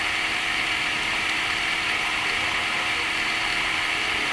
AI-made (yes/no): yes